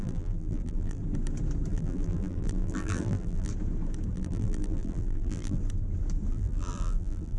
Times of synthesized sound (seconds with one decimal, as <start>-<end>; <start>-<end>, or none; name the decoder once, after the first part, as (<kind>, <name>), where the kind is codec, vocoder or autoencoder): 0.0-1.0 (vocoder, BigVGAN v2); 1.7-3.5; 4.1-5.6; 6.3-7.4